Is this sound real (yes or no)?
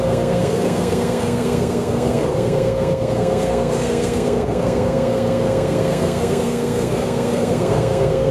no